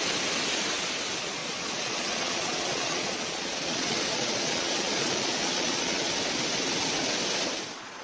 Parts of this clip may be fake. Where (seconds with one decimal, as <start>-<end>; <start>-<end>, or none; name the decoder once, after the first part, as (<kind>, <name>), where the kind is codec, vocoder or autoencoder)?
1.4-6.2 (vocoder, Vocos)